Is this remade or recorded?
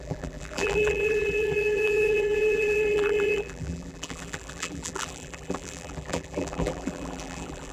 remade